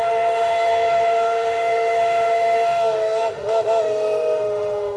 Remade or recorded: remade